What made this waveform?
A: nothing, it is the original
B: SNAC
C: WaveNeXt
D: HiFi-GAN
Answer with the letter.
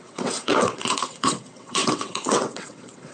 C